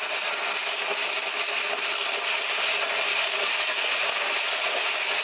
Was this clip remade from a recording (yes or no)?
no